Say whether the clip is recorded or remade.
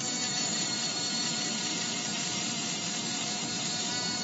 recorded